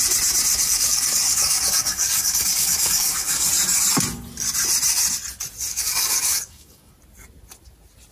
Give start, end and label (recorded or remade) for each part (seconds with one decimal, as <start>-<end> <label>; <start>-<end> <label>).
0.0-0.5 recorded; 0.5-3.5 remade; 3.5-5.7 recorded; 5.7-6.9 remade; 6.9-8.1 recorded